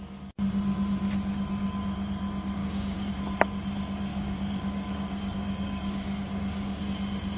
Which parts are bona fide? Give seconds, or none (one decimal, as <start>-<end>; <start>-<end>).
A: 0.0-2.6; 3.1-4.1; 6.8-7.4